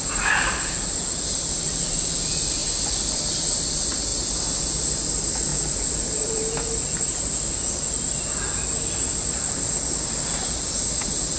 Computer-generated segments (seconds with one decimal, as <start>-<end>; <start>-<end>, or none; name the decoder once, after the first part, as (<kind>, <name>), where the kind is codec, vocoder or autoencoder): 0.0-4.1 (vocoder, BigVGAN v2); 4.7-11.4